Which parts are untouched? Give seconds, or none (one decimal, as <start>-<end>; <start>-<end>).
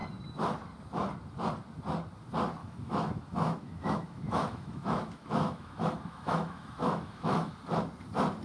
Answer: 0.0-2.6; 7.5-8.4